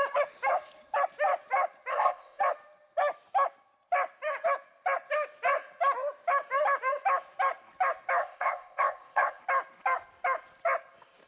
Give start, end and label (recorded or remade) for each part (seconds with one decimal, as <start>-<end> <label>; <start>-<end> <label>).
0.0-1.9 recorded; 1.9-2.4 remade; 2.4-8.2 recorded; 8.2-9.4 remade; 9.4-11.3 recorded